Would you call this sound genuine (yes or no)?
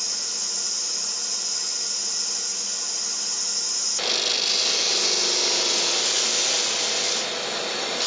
yes